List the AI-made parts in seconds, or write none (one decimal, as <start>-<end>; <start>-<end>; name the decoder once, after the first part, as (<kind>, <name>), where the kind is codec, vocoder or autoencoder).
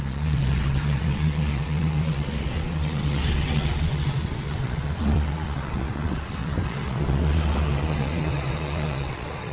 0.0-9.5 (vocoder, WaveNeXt)